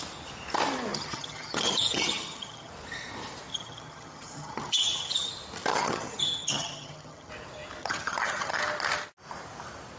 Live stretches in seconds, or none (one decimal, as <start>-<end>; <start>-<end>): 0.0-0.9; 2.7-3.5; 5.3-5.7; 7.3-7.8; 8.6-10.0